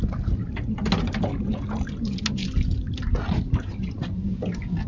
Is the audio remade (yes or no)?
no